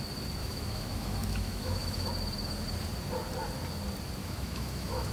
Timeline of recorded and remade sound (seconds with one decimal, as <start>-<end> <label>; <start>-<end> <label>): 0.0-0.4 recorded; 0.4-2.1 remade; 2.1-4.2 recorded; 4.2-5.1 remade

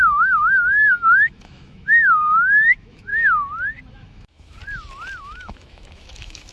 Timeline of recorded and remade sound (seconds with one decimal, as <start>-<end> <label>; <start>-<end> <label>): 0.0-3.1 remade; 3.1-3.9 recorded; 3.9-4.6 remade; 4.6-5.2 recorded; 5.2-6.5 remade

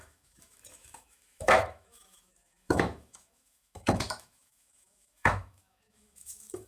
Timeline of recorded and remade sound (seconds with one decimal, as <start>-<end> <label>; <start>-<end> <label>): 0.0-6.7 remade

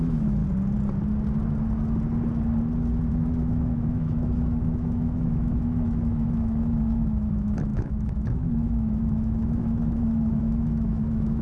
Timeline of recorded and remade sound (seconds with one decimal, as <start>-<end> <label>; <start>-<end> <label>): 0.0-0.4 remade; 0.4-3.1 recorded; 3.1-11.4 remade

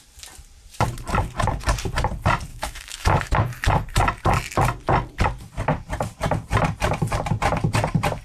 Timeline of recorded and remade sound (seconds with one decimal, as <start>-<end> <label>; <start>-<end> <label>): 0.0-2.5 recorded; 2.5-3.3 remade; 3.3-8.2 recorded

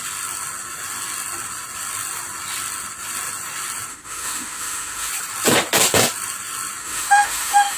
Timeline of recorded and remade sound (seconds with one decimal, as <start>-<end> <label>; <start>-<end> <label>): 0.0-3.9 recorded; 3.9-5.1 remade; 5.1-6.8 recorded; 6.8-7.8 remade